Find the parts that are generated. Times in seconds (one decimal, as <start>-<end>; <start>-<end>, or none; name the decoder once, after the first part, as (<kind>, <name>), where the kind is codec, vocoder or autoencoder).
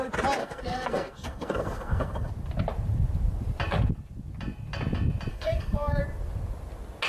0.4-2.3 (codec, SNAC); 5.3-6.0